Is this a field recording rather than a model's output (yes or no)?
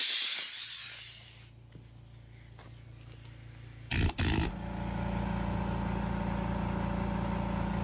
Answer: yes